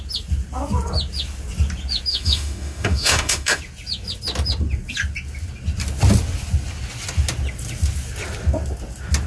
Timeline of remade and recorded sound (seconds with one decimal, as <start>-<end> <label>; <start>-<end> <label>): 0.0-2.1 recorded; 2.1-3.6 remade; 3.6-9.3 recorded